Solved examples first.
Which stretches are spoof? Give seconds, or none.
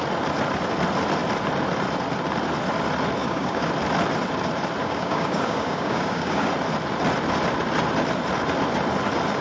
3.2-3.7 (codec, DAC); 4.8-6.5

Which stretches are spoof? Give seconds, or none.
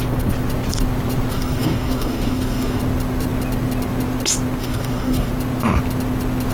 1.3-2.8 (codec, DAC); 4.6-5.3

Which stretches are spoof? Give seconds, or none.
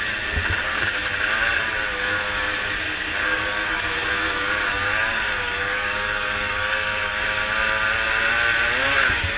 0.6-1.1 (codec, DAC); 3.2-7.1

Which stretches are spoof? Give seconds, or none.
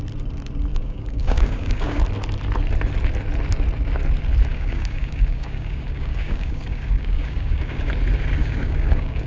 0.7-2.0 (codec, DAC); 4.5-7.9; 8.4-9.3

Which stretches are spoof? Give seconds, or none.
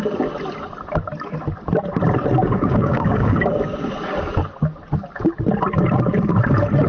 2.4-3.5 (codec, DAC)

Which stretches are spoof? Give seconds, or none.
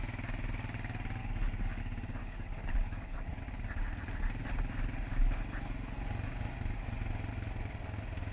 1.2-1.8 (codec, DAC); 2.2-3.4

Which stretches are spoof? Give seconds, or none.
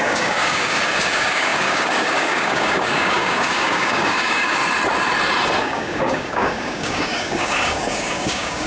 0.0-4.6 (codec, DAC); 5.6-8.7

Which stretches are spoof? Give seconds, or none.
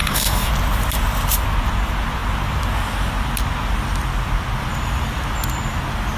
0.0-0.5 (codec, DAC)